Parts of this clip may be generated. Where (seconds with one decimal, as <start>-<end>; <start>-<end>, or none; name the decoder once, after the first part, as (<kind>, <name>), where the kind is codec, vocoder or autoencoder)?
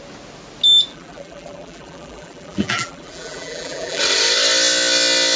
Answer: 0.9-4.0 (vocoder, BigVGAN v2)